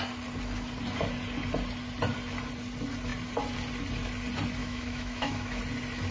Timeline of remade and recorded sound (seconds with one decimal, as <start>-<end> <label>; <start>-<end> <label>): 0.0-4.6 recorded; 4.6-5.6 remade; 5.6-6.1 recorded